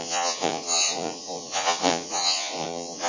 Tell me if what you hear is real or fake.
fake